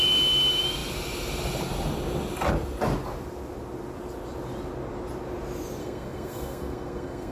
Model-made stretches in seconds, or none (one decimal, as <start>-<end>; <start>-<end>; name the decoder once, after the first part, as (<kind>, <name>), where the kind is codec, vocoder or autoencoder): 5.8-7.3 (codec, SNAC)